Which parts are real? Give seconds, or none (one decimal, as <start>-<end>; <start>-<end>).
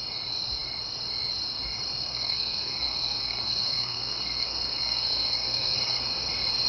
0.0-2.0; 6.0-6.7